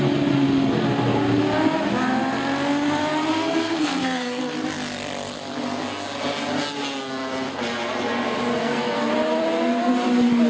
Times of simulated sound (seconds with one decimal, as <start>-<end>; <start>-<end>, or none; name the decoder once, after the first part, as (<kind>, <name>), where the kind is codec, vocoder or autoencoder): 3.3-4.4 (codec, SNAC); 8.5-9.1